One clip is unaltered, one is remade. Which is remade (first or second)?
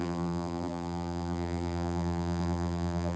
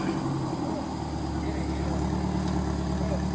first